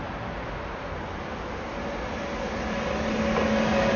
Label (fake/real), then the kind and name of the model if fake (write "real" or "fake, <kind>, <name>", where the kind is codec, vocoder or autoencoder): real